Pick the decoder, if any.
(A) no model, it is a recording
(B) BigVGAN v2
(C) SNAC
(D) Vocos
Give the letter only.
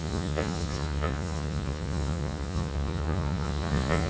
D